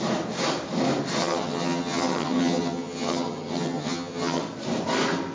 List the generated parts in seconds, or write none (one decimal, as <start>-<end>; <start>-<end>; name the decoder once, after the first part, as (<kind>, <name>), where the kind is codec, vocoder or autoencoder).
1.2-4.4 (vocoder, HiFi-GAN)